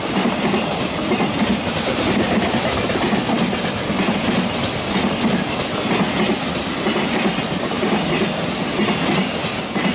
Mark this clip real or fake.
real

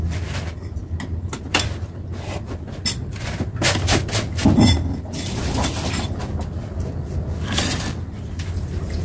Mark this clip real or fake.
real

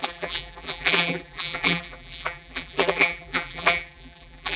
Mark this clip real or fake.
fake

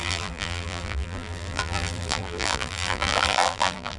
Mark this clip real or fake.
fake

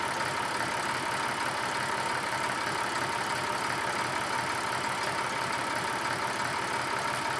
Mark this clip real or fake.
real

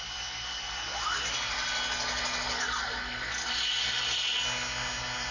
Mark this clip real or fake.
real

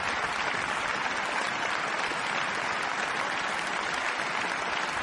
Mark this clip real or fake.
real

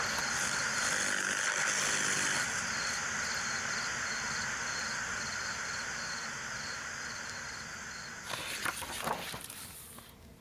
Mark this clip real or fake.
real